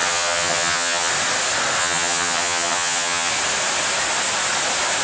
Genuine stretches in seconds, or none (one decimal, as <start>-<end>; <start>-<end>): 1.1-1.8; 3.3-5.0